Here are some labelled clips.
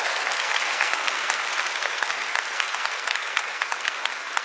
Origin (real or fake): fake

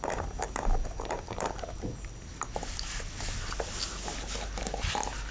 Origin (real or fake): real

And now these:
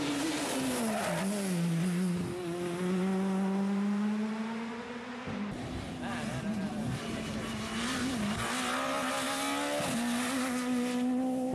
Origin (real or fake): real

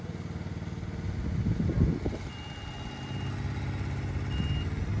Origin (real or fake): real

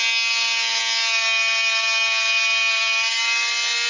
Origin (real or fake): real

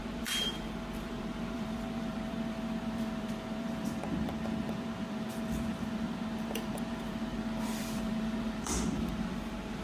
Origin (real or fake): fake